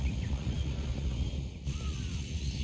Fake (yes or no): yes